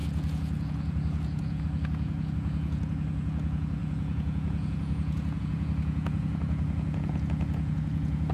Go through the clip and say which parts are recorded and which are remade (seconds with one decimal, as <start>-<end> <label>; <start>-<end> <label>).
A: 0.0-8.3 remade